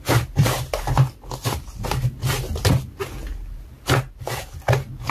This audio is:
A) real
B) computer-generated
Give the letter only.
B